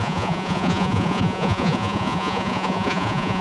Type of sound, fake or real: fake